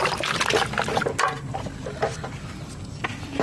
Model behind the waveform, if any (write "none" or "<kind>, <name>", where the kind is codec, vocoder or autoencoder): none